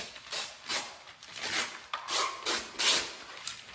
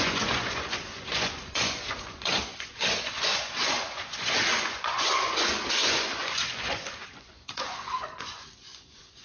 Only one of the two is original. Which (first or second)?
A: first